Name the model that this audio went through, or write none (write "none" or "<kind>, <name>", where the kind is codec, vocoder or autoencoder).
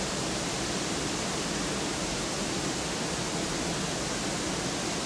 none